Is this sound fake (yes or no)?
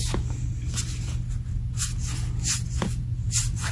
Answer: no